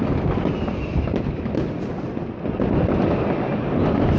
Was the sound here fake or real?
real